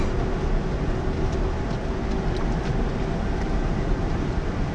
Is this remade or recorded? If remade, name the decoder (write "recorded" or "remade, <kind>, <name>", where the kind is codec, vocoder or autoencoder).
recorded